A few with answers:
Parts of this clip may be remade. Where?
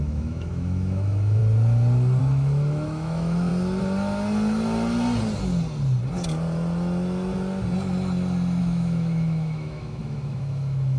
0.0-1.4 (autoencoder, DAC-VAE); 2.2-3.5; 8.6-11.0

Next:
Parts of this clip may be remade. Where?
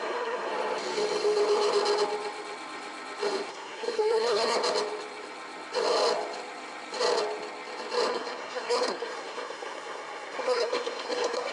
0.0-0.5 (codec, SNAC); 3.5-4.6; 8.1-11.5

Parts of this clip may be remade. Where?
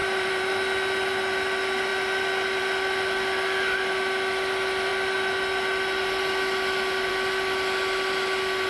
0.0-0.5 (vocoder, BigVGAN v2)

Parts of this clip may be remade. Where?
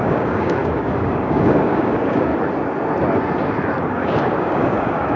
0.0-2.3 (codec, DAC); 3.9-5.2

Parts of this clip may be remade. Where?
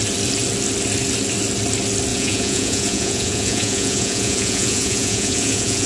2.1-5.9 (vocoder, Vocos)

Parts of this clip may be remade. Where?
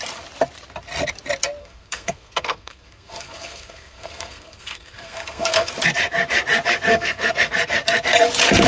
1.6-5.7 (codec, SNAC); 6.9-7.5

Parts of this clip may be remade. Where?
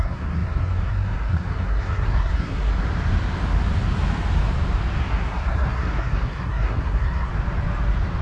0.0-2.7 (codec, SNAC); 5.1-7.3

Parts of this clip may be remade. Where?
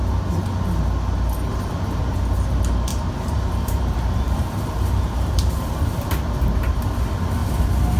1.5-2.0 (vocoder, BigVGAN v2); 2.9-6.8